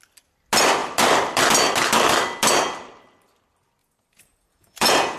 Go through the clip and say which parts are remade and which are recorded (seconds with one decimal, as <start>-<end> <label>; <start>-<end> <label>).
0.0-3.8 recorded; 3.8-5.2 remade